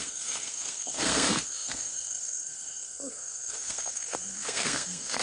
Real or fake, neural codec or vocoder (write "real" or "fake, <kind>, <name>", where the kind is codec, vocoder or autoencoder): fake, codec, SNAC